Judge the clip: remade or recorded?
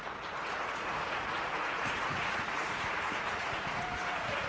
remade